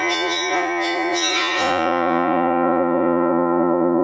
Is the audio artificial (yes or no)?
yes